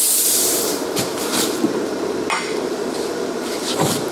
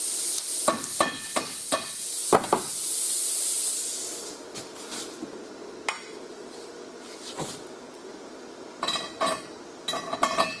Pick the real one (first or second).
second